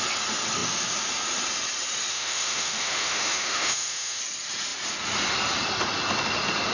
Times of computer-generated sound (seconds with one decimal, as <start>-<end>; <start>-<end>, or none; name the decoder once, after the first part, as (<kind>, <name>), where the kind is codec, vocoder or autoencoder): 2.1-4.2 (autoencoder, DAC-VAE)